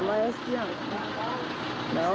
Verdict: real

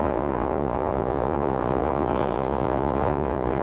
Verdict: fake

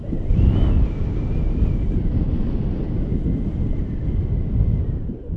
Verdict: real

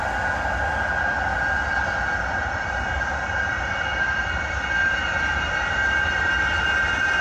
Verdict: real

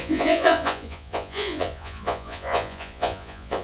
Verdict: fake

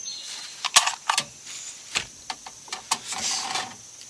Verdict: real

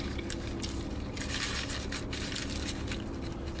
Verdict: real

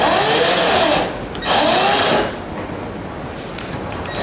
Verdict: real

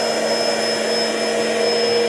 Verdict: real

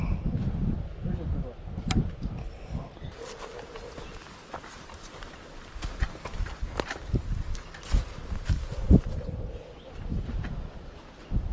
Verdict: real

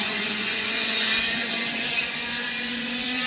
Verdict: fake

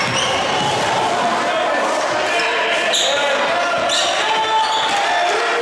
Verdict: real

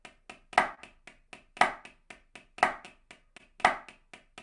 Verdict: real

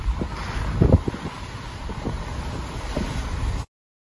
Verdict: real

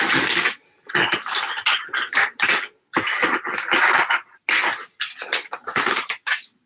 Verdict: real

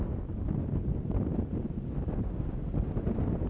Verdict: real